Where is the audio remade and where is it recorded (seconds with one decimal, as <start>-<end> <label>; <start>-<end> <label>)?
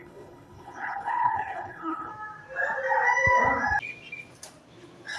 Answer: 0.0-2.1 remade; 2.1-5.2 recorded